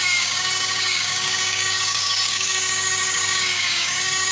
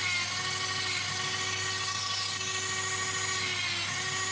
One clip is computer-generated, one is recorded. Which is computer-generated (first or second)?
first